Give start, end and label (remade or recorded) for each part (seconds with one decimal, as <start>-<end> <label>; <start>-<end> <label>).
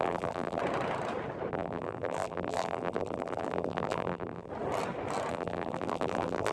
0.0-0.6 remade; 0.6-1.5 recorded; 1.5-4.5 remade; 4.5-5.3 recorded; 5.3-6.5 remade